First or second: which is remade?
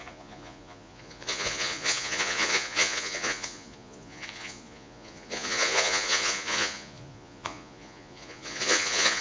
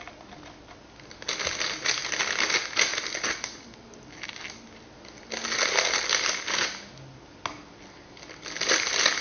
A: first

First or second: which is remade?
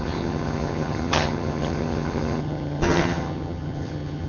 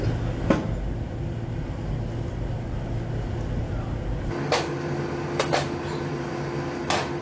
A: first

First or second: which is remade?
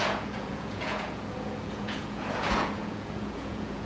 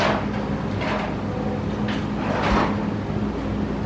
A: first